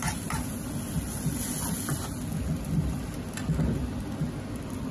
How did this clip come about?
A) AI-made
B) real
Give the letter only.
B